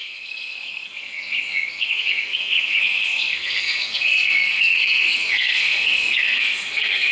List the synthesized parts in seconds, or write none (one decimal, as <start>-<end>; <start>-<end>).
0.0-7.1

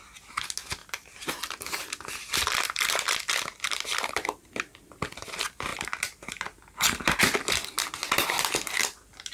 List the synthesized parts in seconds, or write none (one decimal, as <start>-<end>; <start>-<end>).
0.8-5.3

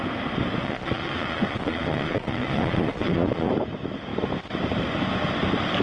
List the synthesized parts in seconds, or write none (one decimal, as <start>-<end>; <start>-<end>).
0.6-3.5

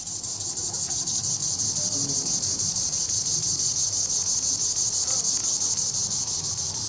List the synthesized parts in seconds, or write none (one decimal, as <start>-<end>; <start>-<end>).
none